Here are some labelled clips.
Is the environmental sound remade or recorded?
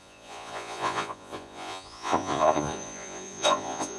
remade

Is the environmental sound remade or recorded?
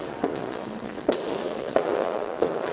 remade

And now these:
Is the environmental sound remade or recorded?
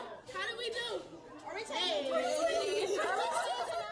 recorded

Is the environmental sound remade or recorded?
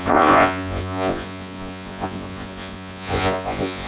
remade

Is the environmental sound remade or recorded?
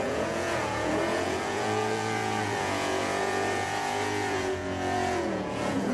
remade